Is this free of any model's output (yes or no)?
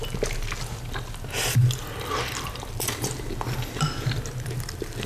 yes